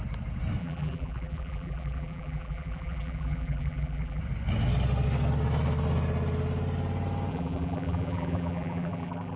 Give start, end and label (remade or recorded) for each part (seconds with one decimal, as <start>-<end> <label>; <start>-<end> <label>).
0.0-0.6 recorded; 0.6-4.2 remade; 4.2-7.3 recorded; 7.3-9.4 remade